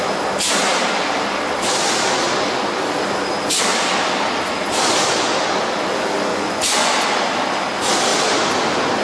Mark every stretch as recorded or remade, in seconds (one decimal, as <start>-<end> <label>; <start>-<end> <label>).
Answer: 0.0-6.3 recorded; 6.3-6.9 remade; 6.9-9.0 recorded